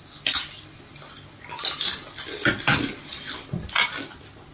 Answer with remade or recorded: recorded